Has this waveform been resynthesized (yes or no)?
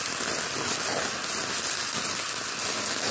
no